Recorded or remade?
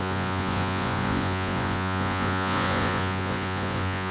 remade